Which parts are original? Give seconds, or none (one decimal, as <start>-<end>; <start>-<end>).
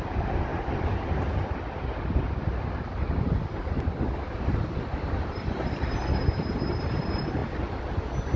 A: 0.0-8.4